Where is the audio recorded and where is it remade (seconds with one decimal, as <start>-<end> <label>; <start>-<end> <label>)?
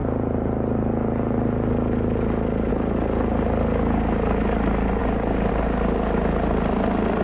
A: 0.0-7.2 recorded